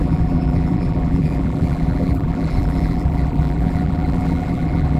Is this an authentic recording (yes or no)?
no